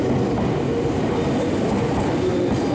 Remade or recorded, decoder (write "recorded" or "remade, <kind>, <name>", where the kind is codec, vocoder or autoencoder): recorded